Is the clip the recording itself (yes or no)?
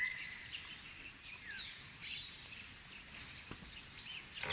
yes